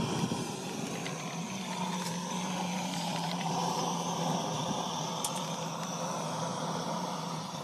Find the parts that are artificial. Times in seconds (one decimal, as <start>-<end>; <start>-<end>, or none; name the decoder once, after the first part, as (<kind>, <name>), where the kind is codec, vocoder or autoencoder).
3.1-4.2 (vocoder, BigVGAN v2); 6.5-7.6